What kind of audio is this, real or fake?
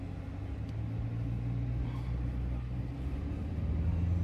real